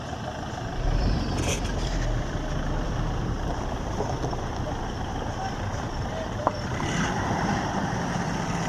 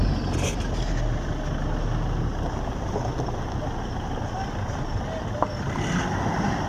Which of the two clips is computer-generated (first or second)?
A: first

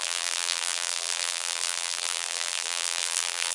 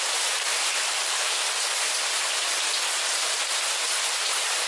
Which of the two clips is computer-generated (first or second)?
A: first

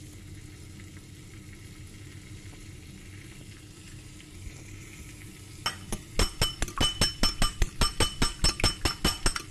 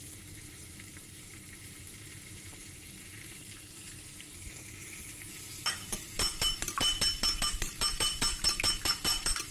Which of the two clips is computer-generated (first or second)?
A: second